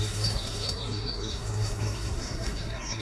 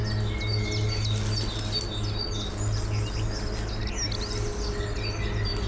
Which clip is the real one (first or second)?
second